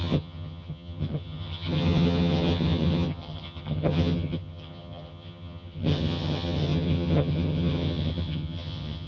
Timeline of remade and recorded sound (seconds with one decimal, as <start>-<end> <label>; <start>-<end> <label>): 0.0-9.1 remade